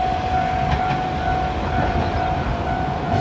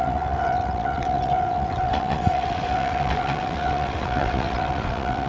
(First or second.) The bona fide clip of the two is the first